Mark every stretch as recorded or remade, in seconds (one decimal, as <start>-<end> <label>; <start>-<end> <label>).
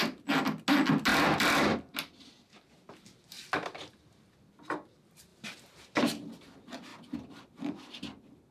0.0-1.1 recorded; 1.1-3.9 remade; 3.9-6.9 recorded; 6.9-8.0 remade; 8.0-8.5 recorded